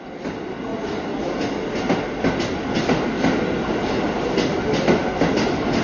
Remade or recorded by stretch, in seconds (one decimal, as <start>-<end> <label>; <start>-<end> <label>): 0.0-5.8 recorded

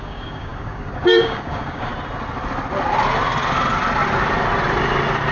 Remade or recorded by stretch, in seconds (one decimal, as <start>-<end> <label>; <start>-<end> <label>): 0.0-1.9 remade; 1.9-5.3 recorded